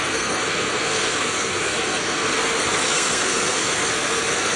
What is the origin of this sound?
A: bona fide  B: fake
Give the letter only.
B